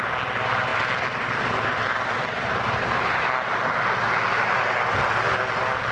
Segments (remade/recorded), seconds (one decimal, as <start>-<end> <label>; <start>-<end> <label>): 0.0-5.9 recorded